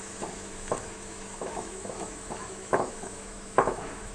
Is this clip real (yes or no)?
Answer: no